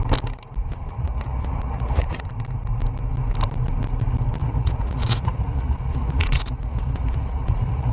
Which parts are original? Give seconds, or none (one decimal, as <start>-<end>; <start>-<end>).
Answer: 0.0-0.6; 2.3-4.4

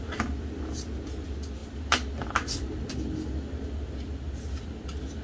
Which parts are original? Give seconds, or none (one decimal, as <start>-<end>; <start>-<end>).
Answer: 0.0-5.2

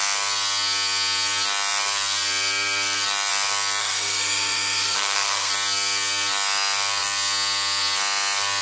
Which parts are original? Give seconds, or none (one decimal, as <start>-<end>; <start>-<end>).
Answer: 0.0-3.8; 5.5-8.6

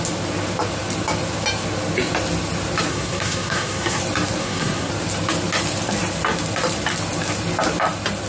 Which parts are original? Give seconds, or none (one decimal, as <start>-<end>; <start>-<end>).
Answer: 0.0-2.9; 4.0-4.4; 4.9-8.3

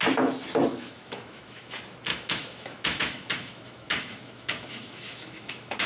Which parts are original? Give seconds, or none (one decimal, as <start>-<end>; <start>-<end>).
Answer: 0.0-0.7; 1.7-2.1